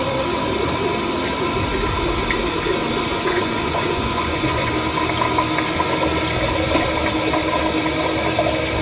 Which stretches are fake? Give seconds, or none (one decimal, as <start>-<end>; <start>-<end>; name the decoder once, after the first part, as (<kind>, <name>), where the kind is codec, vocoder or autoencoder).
3.1-4.7 (vocoder, Vocos)